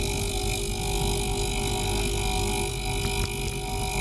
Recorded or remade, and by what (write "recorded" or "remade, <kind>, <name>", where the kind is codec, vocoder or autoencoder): recorded